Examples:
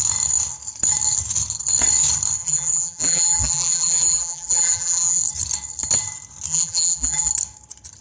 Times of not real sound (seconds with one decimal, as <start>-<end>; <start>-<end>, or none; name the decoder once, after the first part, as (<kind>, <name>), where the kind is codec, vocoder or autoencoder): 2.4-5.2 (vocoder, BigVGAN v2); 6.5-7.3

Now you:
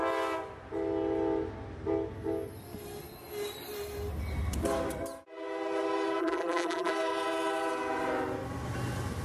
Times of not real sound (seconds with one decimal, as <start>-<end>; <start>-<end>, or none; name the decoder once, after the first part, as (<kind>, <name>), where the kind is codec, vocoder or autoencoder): 6.2-6.9 (vocoder, BigVGAN v2)

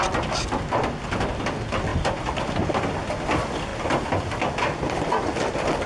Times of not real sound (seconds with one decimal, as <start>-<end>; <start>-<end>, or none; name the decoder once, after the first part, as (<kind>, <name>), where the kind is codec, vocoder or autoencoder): 1.9-3.1 (vocoder, BigVGAN v2); 3.7-4.3

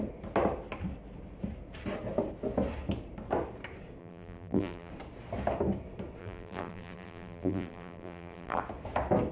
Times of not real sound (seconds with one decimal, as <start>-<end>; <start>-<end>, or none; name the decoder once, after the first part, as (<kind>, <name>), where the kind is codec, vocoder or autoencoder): 4.0-4.9 (vocoder, BigVGAN v2); 6.2-8.6

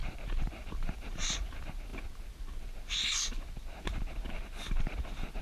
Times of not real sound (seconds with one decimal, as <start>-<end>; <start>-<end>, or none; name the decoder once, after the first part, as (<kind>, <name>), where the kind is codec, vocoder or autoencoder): 0.0-1.5 (vocoder, BigVGAN v2)

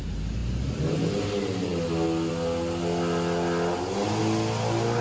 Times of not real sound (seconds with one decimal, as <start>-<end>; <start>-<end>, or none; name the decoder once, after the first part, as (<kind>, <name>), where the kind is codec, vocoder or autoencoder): none

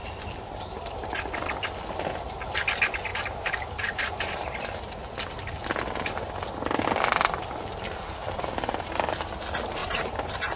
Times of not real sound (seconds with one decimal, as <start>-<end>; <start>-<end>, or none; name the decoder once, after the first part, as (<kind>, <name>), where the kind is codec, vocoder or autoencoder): 0.0-1.1 (vocoder, BigVGAN v2); 3.1-4.6; 9.8-10.6